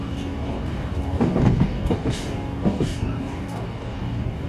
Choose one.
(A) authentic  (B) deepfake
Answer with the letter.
B